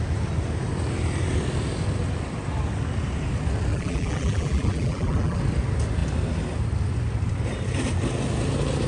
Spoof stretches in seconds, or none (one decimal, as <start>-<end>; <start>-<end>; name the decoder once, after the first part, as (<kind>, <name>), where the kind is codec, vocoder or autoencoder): 3.7-5.4 (vocoder, BigVGAN v2)